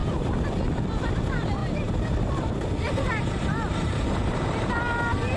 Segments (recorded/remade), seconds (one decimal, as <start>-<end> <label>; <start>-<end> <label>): 0.0-1.6 recorded; 1.6-4.8 remade; 4.8-5.4 recorded